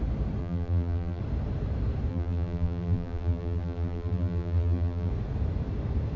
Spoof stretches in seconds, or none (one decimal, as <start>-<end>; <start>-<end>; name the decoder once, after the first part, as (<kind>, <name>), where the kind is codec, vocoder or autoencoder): 0.4-1.2 (vocoder, BigVGAN v2); 2.1-5.1